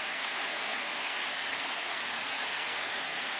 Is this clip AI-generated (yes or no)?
yes